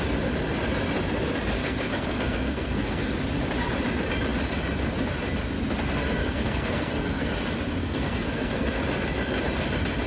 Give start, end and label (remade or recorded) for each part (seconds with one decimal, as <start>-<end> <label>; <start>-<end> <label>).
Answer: 0.0-1.6 recorded; 1.6-3.1 remade; 3.1-6.2 recorded; 6.2-7.3 remade; 7.3-7.8 recorded; 7.8-8.8 remade; 8.8-10.1 recorded